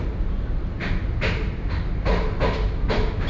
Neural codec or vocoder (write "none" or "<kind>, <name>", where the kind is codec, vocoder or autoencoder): none